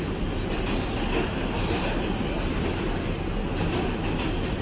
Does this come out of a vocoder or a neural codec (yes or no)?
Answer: no